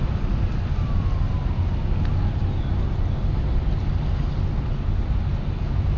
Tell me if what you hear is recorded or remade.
recorded